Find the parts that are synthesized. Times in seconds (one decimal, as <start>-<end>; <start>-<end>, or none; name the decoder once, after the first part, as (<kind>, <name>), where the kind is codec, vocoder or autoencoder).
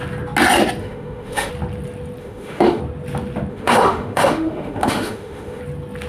0.8-1.5 (autoencoder, DAC-VAE); 2.2-2.8; 3.5-5.6